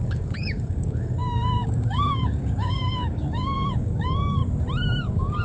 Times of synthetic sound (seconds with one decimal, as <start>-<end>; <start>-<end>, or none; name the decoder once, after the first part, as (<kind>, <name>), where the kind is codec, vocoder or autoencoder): 0.0-4.4 (codec, DAC); 5.0-5.4